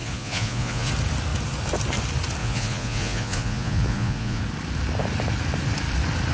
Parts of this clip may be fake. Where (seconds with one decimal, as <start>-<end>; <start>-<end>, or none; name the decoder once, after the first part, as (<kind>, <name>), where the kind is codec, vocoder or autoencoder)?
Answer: 0.0-0.9 (vocoder, Vocos); 2.4-4.4